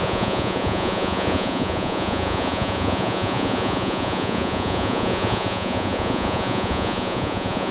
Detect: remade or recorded remade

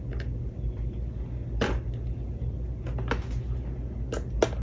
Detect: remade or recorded recorded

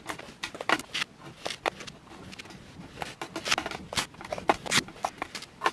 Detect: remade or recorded recorded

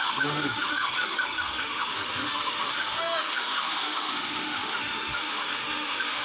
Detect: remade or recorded remade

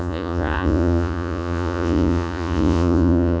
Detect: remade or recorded remade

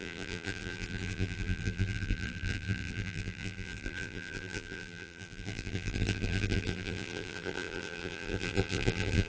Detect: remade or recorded remade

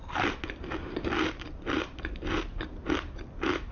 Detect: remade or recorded recorded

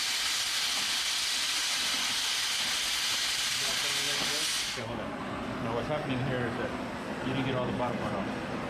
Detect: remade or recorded recorded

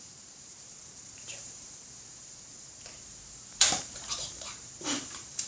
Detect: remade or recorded remade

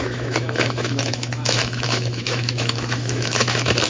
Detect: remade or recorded remade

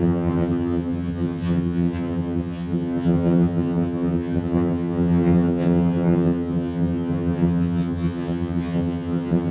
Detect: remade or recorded remade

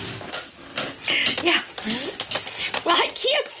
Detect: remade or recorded recorded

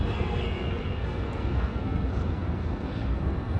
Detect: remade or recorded remade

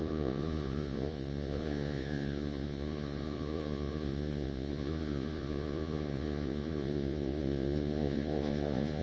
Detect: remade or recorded remade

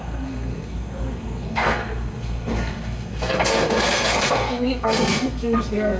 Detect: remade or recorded remade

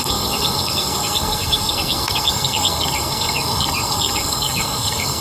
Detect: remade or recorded remade